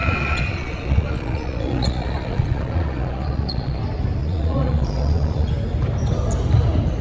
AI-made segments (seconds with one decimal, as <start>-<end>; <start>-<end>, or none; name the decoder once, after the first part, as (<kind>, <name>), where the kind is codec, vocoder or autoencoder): 0.0-3.8 (vocoder, Vocos); 4.2-5.5